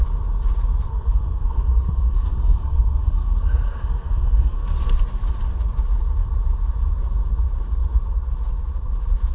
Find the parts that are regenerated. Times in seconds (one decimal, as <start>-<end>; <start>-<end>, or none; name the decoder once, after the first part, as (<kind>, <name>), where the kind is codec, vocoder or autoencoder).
0.9-4.9 (codec, SNAC)